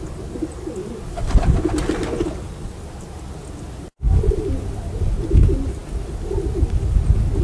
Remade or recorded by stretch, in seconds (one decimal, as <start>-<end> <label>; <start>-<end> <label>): 0.0-7.4 recorded